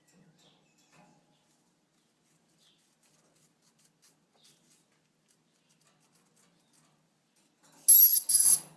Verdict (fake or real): real